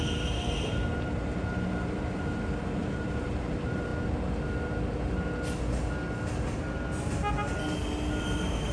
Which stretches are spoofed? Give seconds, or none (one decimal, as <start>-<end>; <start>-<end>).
0.0-3.9; 8.2-8.7